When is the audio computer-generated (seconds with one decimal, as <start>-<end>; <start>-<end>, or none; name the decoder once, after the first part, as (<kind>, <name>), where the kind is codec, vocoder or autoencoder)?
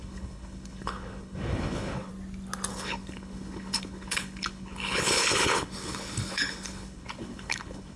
0.0-2.1 (codec, HILCodec); 2.7-8.0